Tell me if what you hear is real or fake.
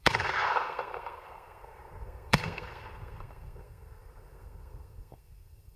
fake